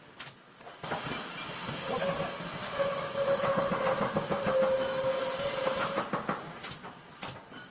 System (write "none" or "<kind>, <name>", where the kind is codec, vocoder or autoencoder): none